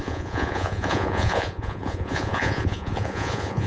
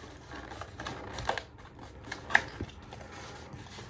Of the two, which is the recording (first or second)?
second